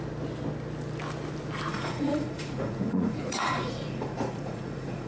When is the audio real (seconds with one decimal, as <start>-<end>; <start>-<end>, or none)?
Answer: 0.0-1.7